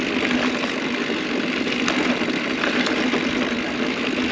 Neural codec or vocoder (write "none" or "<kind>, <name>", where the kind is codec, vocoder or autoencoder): none